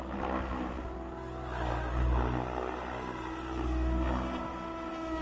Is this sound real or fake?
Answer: real